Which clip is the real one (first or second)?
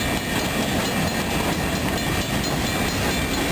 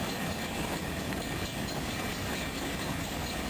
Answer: first